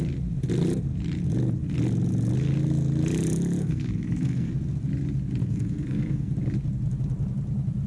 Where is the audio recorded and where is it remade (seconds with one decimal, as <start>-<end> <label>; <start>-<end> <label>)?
0.0-3.6 recorded; 3.6-4.5 remade; 4.5-5.4 recorded; 5.4-6.3 remade; 6.3-7.9 recorded